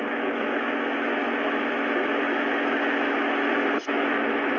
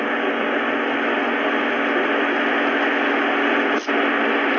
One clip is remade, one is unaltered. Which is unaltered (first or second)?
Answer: second